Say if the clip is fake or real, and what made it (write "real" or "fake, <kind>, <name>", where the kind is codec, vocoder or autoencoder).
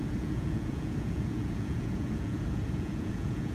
fake, vocoder, Vocos